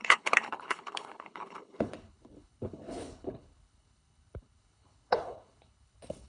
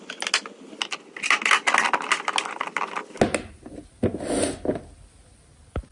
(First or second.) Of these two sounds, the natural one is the second